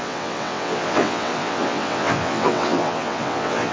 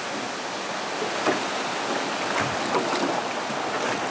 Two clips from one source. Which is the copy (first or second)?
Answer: first